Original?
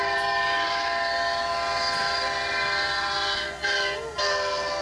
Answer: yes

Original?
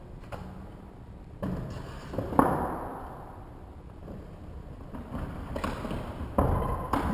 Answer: yes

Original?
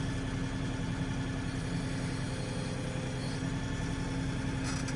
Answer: yes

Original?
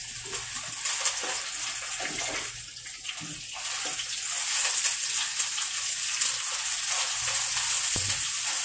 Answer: yes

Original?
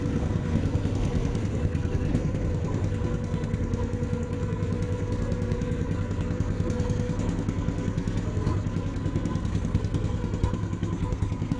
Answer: no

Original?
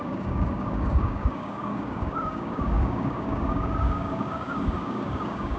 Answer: no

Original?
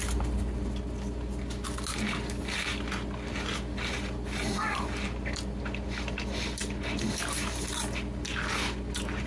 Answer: yes